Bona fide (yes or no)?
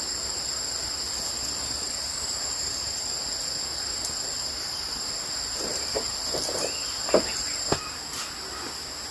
yes